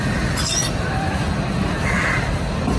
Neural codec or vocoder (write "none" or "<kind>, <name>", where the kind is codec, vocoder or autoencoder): vocoder, BigVGAN v2